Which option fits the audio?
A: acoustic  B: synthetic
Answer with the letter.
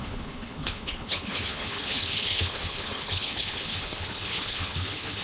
B